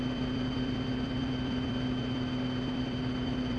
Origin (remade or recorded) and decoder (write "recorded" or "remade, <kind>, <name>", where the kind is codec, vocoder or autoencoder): remade, vocoder, BigVGAN v2